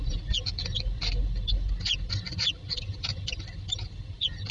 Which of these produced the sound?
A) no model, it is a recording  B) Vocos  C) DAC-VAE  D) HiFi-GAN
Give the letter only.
A